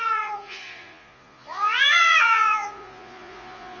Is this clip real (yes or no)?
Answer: no